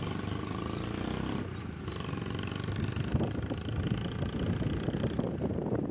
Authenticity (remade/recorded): recorded